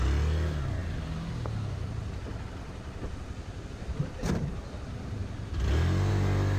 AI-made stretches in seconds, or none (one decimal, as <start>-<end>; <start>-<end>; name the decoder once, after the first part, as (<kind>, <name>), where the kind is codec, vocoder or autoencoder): none